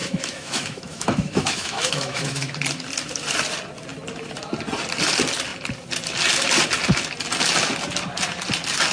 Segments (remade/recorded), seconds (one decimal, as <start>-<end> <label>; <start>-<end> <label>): 0.0-2.5 remade; 2.5-8.9 recorded